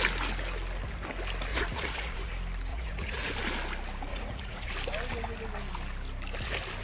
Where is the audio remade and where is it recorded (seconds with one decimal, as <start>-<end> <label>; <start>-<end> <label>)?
0.0-1.5 recorded; 1.5-2.3 remade; 2.3-2.7 recorded; 2.7-3.3 remade; 3.3-4.1 recorded; 4.1-4.7 remade; 4.7-6.8 recorded